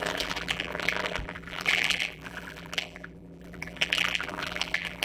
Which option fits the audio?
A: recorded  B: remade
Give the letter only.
B